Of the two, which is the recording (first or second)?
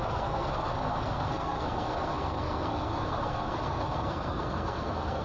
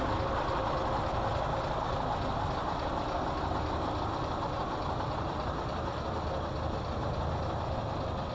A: second